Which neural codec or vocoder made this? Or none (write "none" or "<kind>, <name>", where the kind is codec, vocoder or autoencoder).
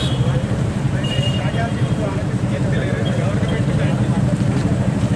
vocoder, BigVGAN v2